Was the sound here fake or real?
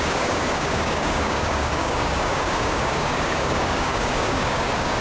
fake